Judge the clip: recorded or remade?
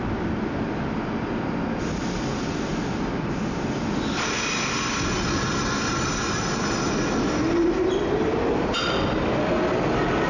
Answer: recorded